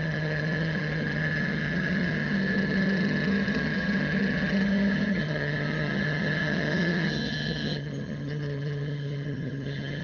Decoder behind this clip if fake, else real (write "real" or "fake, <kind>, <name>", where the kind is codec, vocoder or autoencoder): fake, vocoder, HiFi-GAN